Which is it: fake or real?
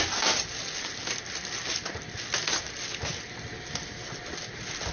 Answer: real